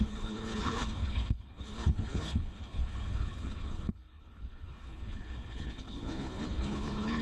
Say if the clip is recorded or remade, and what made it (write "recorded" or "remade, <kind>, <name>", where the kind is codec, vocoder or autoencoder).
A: remade, codec, HILCodec